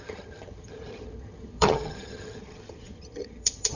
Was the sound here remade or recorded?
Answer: remade